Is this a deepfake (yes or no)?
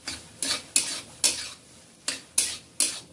no